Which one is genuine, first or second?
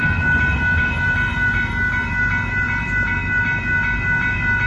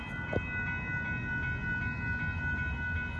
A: second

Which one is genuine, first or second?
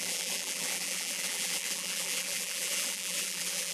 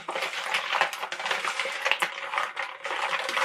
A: second